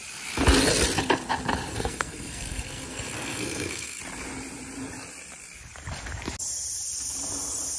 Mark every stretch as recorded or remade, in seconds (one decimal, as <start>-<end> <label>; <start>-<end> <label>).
0.0-1.7 recorded; 1.7-4.0 remade; 4.0-7.8 recorded